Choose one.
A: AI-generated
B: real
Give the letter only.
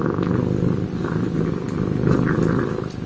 B